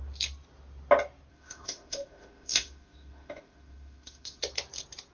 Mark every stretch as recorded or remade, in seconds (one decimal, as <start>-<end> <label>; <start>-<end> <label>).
0.0-1.3 recorded; 1.3-4.4 remade; 4.4-5.1 recorded